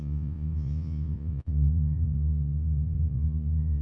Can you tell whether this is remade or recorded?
remade